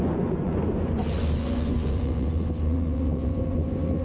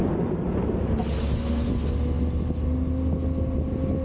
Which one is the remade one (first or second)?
first